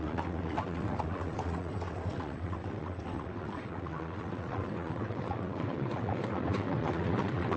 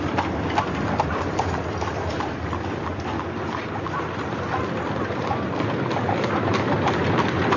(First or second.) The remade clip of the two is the first